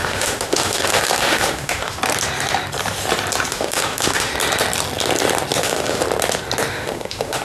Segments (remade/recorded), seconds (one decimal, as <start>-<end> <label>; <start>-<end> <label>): 0.0-2.0 remade; 2.0-3.5 recorded; 3.5-4.3 remade; 4.3-5.6 recorded; 5.6-6.0 remade; 6.0-6.7 recorded; 6.7-7.4 remade

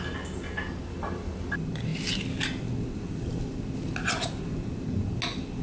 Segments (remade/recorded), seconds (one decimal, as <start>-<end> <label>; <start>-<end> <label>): 0.0-5.6 recorded

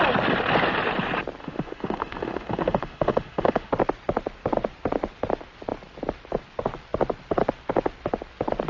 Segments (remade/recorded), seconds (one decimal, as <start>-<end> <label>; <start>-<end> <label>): 0.0-1.4 recorded; 1.4-3.7 remade; 3.7-8.7 recorded

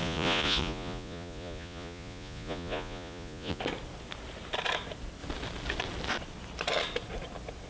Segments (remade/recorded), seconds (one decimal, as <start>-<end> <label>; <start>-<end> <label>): 0.0-3.6 remade; 3.6-7.7 recorded

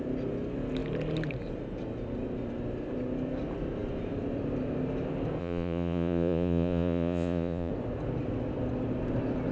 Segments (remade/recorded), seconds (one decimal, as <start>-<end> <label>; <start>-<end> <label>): 0.0-5.4 recorded; 5.4-7.7 remade; 7.7-9.5 recorded

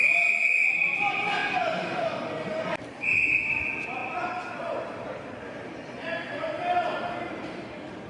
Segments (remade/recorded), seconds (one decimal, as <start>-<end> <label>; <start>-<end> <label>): 0.0-1.4 remade; 1.4-2.0 recorded; 2.0-8.1 remade

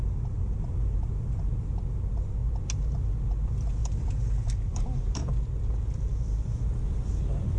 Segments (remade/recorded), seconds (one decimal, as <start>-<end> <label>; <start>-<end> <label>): 0.0-3.8 recorded; 3.8-5.3 remade; 5.3-7.6 recorded

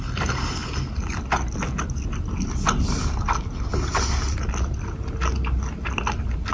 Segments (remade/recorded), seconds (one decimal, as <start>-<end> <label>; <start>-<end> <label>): 0.0-6.5 recorded